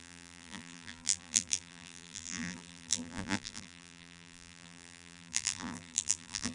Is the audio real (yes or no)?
no